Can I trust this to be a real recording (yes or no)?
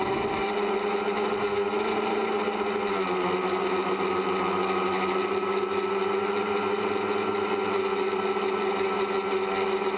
yes